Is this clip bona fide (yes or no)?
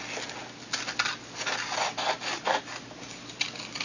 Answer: yes